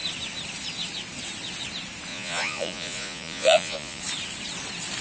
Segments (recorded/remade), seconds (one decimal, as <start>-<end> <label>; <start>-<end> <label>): 0.0-2.1 recorded; 2.1-4.0 remade; 4.0-5.0 recorded